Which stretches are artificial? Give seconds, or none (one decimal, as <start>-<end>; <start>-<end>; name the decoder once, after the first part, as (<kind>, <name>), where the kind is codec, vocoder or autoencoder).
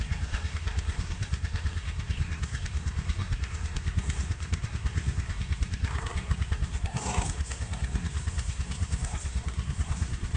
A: 0.0-10.4 (codec, SNAC)